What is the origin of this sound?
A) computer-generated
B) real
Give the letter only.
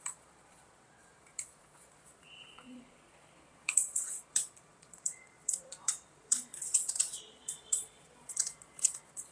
A